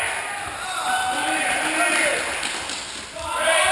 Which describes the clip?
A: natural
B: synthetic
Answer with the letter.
A